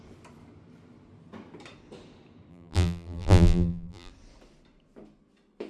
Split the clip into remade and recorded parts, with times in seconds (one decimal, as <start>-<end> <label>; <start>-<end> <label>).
0.0-2.5 recorded; 2.5-4.1 remade; 4.1-5.7 recorded